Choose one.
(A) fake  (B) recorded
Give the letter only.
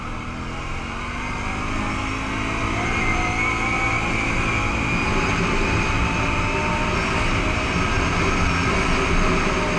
B